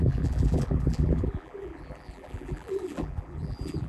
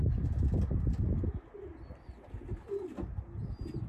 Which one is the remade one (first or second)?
first